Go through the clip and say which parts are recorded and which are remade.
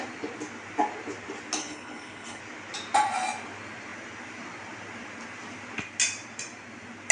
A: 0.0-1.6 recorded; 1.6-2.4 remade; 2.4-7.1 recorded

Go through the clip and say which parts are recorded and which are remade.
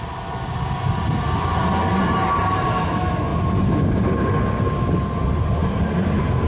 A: 0.0-3.3 recorded; 3.3-4.4 remade; 4.4-5.6 recorded; 5.6-6.5 remade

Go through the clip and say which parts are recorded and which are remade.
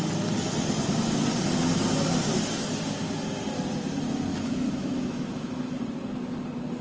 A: 0.0-4.3 recorded; 4.3-5.8 remade; 5.8-6.8 recorded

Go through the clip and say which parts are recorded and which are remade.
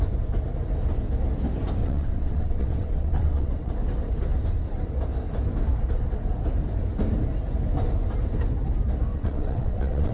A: 0.0-1.8 recorded; 1.8-3.7 remade; 3.7-9.1 recorded; 9.1-10.1 remade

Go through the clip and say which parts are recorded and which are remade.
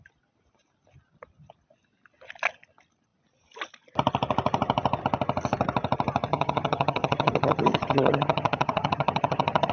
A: 0.0-6.3 recorded; 6.3-9.7 remade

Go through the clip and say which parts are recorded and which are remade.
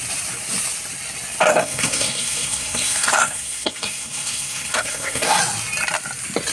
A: 0.0-1.5 recorded; 1.5-5.4 remade; 5.4-6.5 recorded